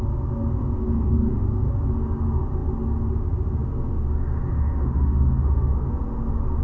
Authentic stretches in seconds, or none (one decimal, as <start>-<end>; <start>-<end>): 0.0-0.6; 1.7-4.5; 5.9-6.6